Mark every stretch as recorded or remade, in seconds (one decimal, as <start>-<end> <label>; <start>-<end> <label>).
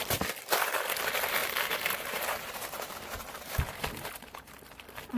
0.0-1.4 recorded; 1.4-4.5 remade; 4.5-5.2 recorded